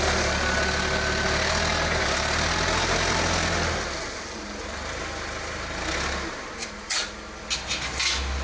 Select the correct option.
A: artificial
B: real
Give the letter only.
B